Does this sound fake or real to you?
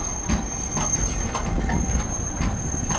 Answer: real